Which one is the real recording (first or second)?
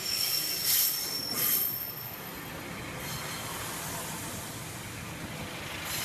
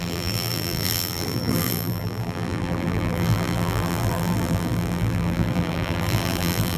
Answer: first